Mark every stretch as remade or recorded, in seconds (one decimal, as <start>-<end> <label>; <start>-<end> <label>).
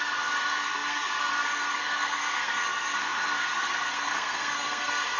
0.0-5.2 remade